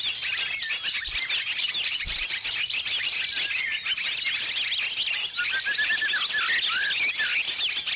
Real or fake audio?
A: real